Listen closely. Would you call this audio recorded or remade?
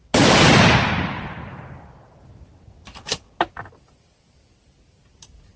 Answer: recorded